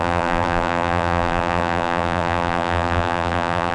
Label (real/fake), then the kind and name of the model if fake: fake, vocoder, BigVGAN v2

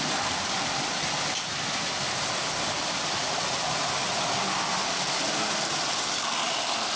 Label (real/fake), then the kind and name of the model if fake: fake, vocoder, BigVGAN v2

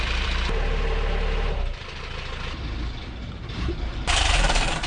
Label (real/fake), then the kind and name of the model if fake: fake, vocoder, BigVGAN v2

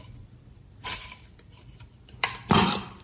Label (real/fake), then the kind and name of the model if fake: fake, vocoder, BigVGAN v2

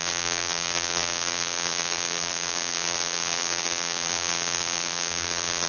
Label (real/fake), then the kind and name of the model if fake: fake, vocoder, BigVGAN v2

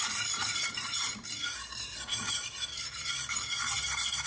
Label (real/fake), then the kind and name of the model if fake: fake, vocoder, BigVGAN v2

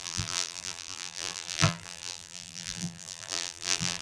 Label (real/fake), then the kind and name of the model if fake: fake, vocoder, BigVGAN v2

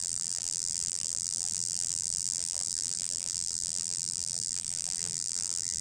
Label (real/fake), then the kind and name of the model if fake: fake, vocoder, BigVGAN v2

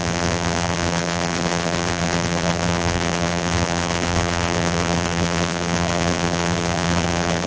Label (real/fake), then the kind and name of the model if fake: fake, vocoder, BigVGAN v2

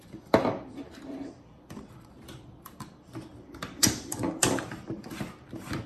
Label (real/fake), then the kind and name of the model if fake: fake, vocoder, BigVGAN v2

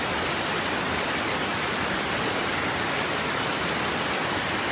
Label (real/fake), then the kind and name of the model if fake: real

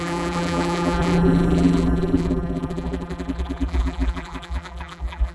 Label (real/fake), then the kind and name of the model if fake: fake, vocoder, BigVGAN v2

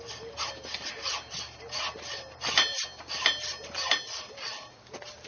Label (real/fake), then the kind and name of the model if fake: real